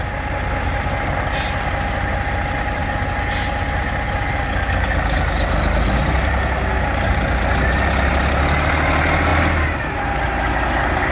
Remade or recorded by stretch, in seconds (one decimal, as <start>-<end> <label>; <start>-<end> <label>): 0.0-11.1 recorded